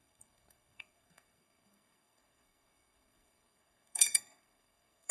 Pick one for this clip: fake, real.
fake